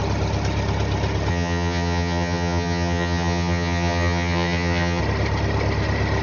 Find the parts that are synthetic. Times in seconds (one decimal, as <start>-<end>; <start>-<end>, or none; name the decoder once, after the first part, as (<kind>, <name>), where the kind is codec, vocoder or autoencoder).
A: 1.3-5.0 (vocoder, HiFi-GAN)